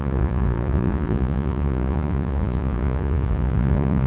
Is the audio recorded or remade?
remade